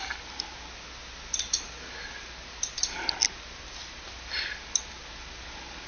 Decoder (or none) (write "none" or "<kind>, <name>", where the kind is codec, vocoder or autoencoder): none